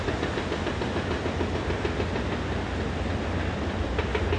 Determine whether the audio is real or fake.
real